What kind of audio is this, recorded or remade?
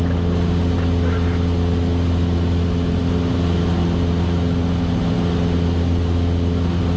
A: recorded